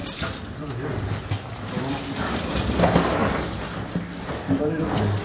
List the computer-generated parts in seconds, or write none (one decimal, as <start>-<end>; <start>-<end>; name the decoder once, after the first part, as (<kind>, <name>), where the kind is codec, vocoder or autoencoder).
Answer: none